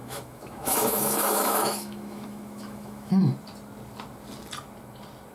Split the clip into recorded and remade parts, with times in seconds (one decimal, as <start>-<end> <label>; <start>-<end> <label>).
0.0-3.2 remade; 3.2-5.3 recorded